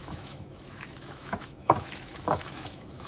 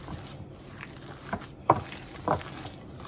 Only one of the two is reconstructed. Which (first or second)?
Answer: first